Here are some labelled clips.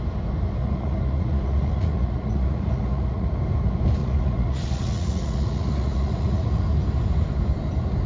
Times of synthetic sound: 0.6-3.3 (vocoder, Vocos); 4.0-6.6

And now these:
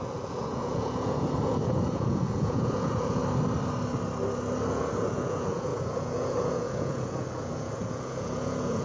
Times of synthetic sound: 0.0-3.2 (vocoder, Vocos); 4.7-8.8